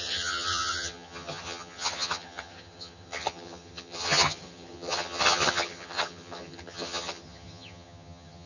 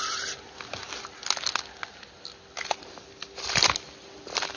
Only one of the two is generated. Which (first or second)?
first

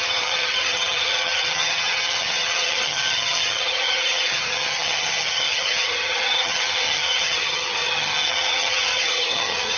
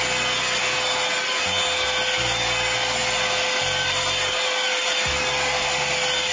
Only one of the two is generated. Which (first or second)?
first